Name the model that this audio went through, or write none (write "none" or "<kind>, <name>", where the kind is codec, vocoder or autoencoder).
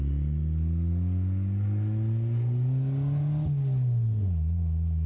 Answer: none